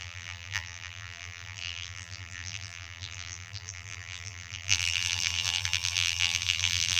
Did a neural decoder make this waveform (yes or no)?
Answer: yes